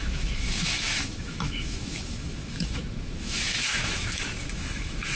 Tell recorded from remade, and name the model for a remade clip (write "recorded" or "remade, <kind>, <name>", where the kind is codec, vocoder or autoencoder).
remade, autoencoder, DAC-VAE